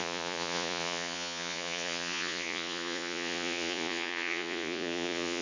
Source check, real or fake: fake